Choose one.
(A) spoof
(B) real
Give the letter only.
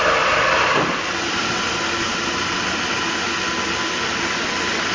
B